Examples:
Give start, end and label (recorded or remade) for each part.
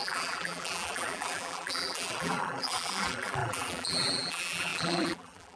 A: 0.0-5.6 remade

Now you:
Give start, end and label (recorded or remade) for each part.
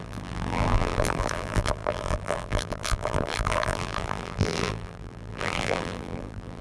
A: 0.0-6.6 remade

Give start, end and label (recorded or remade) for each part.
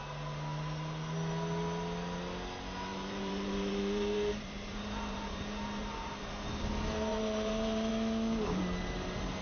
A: 0.0-2.9 recorded; 2.9-6.3 remade; 6.3-7.1 recorded; 7.1-7.9 remade; 7.9-9.4 recorded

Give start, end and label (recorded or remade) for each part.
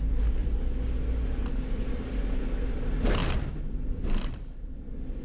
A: 0.0-0.4 recorded; 0.4-1.9 remade; 1.9-3.2 recorded; 3.2-4.8 remade; 4.8-5.2 recorded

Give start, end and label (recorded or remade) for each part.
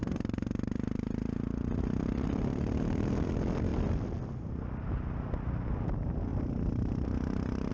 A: 0.0-1.8 remade; 1.8-6.3 recorded; 6.3-7.7 remade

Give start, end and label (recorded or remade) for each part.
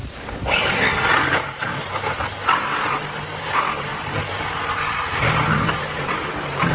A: 0.0-6.7 recorded